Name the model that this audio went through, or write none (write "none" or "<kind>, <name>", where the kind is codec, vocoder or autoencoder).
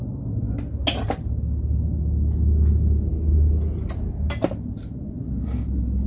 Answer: none